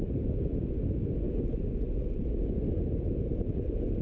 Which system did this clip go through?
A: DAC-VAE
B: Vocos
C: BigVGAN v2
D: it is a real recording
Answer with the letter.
D